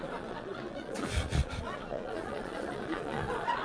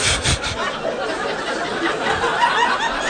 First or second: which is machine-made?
first